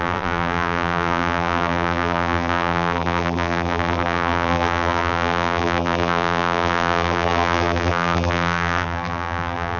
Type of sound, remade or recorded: remade